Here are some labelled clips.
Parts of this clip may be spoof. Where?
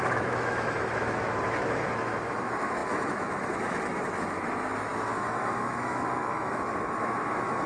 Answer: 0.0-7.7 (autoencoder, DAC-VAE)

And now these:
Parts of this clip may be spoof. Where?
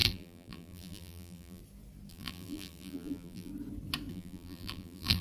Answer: 0.0-1.6 (vocoder, BigVGAN v2); 2.1-3.5; 4.1-5.2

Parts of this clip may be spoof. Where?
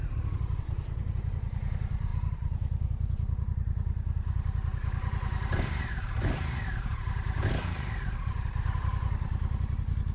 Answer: 0.0-10.1 (vocoder, BigVGAN v2)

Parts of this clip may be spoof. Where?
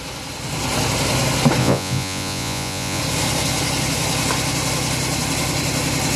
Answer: 1.6-3.0 (vocoder, Vocos)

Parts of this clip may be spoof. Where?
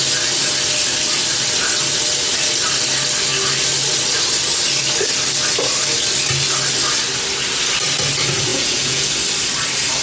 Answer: 8.5-9.1 (vocoder, Vocos)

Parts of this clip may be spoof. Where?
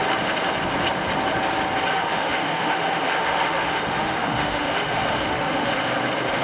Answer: 1.9-5.7 (autoencoder, DAC-VAE)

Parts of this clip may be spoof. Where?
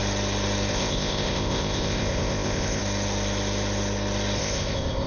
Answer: 0.7-2.8 (codec, ZipCodec); 4.4-5.1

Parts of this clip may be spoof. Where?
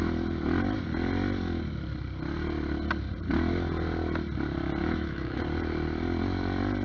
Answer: 4.8-5.4 (autoencoder, DAC-VAE)